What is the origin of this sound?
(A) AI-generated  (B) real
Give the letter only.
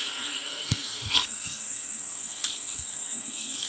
A